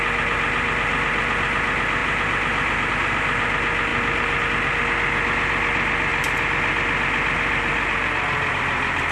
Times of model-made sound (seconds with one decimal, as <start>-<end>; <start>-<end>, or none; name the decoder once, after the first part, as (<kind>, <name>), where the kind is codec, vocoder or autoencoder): none